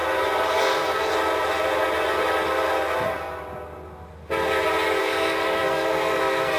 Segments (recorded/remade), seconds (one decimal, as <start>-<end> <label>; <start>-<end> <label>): 0.0-0.6 recorded; 0.6-1.1 remade; 1.1-5.0 recorded; 5.0-6.6 remade